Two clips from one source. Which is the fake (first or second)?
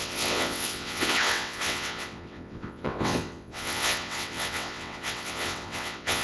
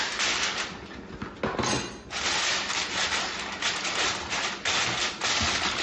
first